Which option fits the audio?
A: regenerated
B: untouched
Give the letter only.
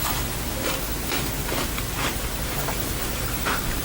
A